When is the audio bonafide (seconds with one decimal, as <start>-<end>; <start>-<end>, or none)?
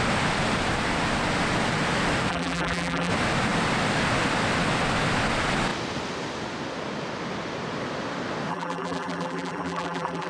0.0-2.3; 3.1-8.5